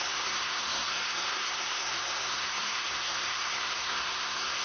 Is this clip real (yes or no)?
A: no